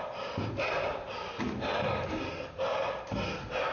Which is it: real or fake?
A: real